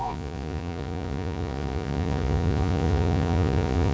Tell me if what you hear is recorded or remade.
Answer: remade